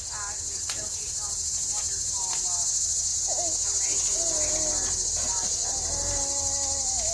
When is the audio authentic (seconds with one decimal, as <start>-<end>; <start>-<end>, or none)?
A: 0.0-7.1